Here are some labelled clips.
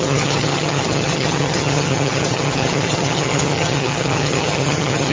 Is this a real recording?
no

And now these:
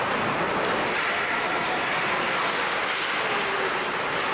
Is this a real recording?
yes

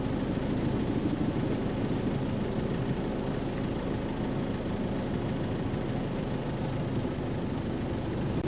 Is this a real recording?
yes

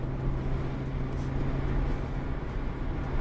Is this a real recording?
yes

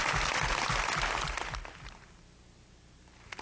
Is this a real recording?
yes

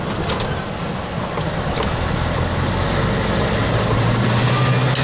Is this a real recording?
yes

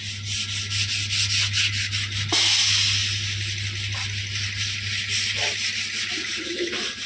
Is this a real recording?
yes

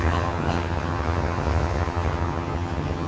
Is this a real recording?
no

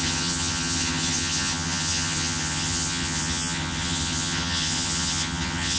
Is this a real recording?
no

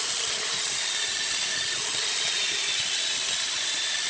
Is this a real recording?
yes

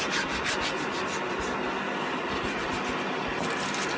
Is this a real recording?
yes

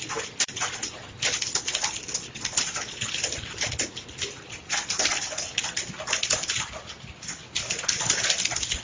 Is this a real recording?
yes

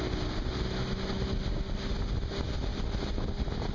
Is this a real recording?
yes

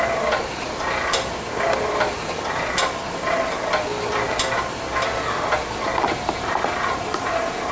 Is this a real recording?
yes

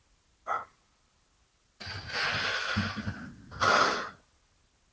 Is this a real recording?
yes